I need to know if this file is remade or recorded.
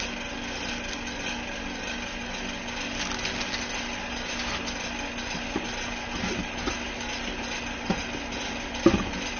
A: recorded